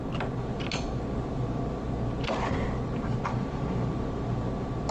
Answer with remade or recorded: recorded